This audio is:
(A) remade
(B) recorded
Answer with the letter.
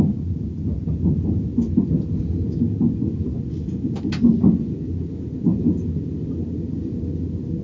B